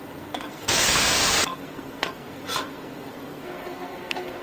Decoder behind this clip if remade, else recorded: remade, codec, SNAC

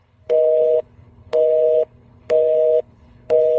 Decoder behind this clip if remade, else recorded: remade, codec, HILCodec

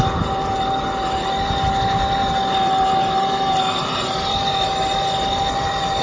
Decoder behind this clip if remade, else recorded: recorded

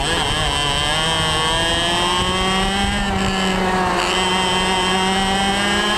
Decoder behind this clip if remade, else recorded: recorded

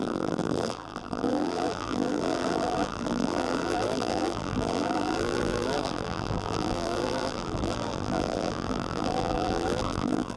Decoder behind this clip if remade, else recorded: remade, vocoder, BigVGAN v2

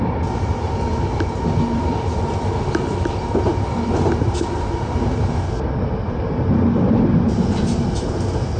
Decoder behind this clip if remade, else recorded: recorded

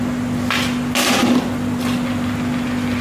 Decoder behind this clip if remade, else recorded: recorded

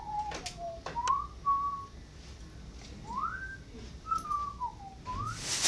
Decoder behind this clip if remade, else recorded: recorded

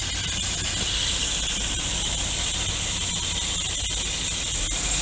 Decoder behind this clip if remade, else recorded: recorded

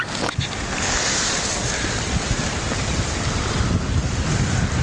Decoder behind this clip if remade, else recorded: recorded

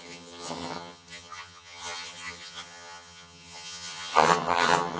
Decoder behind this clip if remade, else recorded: remade, vocoder, HiFi-GAN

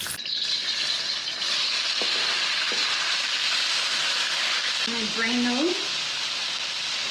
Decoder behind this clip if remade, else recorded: recorded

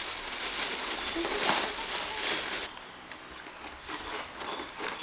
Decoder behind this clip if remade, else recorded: recorded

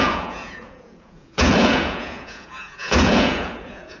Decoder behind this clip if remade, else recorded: remade, vocoder, Vocos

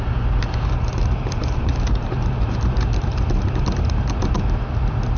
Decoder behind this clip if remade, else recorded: remade, vocoder, BigVGAN v2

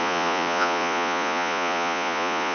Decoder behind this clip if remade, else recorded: remade, vocoder, Vocos